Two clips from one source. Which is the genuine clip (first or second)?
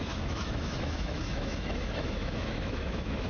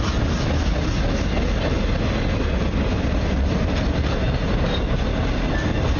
second